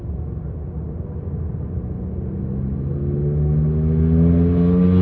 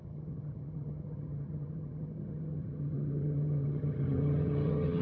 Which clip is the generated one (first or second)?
second